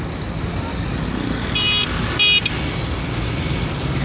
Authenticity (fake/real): real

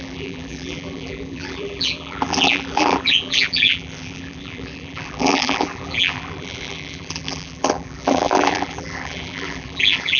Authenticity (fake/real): fake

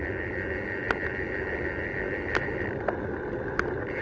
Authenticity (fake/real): real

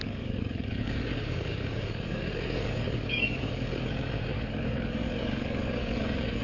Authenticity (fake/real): fake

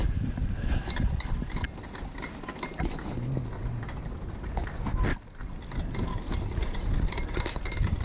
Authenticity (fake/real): real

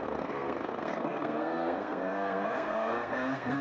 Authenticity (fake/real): fake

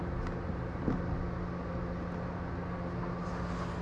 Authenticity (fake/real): real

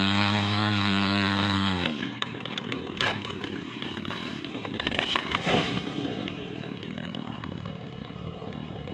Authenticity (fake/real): fake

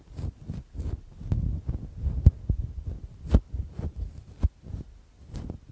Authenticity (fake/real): real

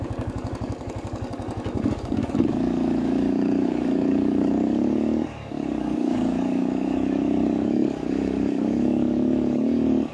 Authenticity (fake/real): fake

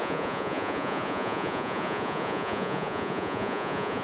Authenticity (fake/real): fake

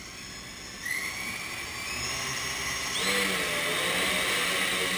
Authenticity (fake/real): real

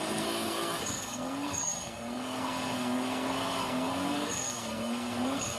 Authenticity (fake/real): fake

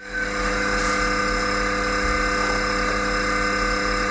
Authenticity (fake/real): real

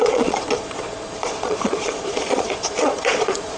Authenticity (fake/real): fake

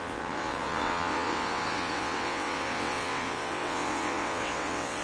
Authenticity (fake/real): fake